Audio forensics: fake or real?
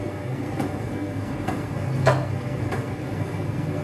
fake